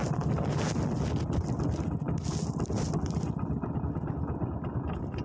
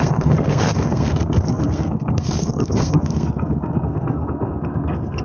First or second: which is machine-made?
second